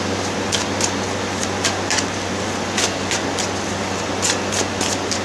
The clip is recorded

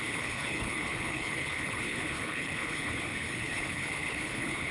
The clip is remade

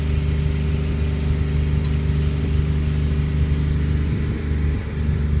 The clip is recorded